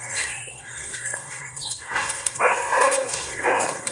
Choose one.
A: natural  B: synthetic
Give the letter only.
B